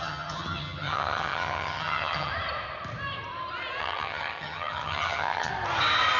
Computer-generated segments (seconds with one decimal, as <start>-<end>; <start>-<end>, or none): 0.0-2.3; 3.8-5.5